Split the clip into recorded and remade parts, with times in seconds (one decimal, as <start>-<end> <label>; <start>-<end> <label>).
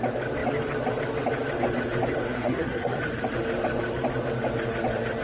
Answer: 0.0-2.2 recorded; 2.2-3.0 remade; 3.0-5.2 recorded